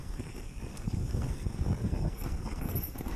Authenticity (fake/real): fake